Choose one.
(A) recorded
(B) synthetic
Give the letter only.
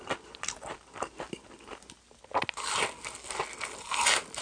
A